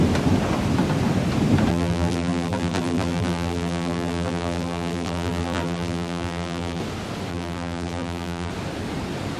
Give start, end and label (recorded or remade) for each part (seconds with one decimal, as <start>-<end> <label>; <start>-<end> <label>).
0.0-1.7 recorded; 1.7-6.8 remade; 6.8-7.3 recorded; 7.3-8.5 remade; 8.5-9.4 recorded